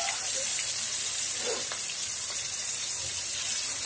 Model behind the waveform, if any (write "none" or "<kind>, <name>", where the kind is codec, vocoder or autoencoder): none